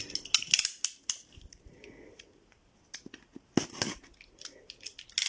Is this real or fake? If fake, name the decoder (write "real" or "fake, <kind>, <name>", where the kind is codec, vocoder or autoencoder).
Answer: real